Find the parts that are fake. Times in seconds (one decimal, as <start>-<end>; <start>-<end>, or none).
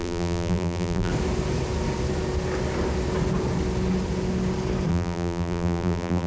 0.0-1.1; 4.9-6.3